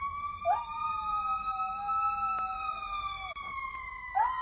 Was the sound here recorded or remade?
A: recorded